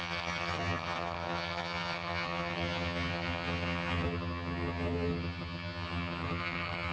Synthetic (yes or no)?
yes